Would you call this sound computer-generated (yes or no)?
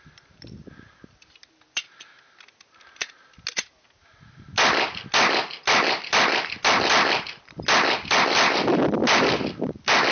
no